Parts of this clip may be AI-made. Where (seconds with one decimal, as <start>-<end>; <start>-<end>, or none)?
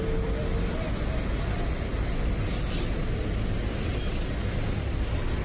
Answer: none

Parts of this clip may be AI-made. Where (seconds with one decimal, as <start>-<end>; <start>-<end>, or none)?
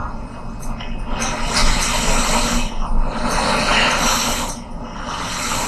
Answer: none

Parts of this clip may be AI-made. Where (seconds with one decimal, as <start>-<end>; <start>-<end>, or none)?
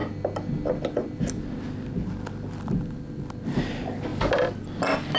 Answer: none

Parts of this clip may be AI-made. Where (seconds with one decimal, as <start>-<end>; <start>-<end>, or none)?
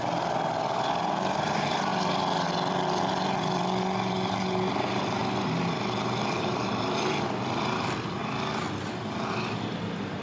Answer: 0.0-1.9; 3.0-5.2; 6.3-8.2; 9.3-10.2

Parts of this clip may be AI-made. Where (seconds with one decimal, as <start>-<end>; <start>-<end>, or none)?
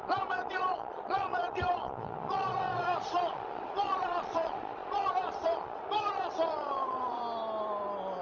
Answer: 0.0-7.2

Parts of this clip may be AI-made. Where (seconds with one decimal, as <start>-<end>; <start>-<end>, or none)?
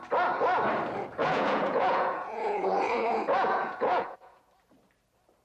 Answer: 1.2-4.4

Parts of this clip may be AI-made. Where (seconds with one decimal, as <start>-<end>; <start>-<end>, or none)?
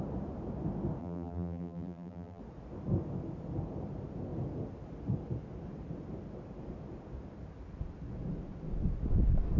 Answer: 1.0-2.4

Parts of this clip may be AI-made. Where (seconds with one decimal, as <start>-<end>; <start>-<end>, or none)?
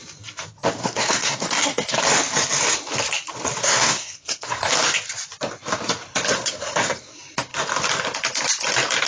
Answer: 0.8-2.0; 3.6-4.7; 6.3-7.1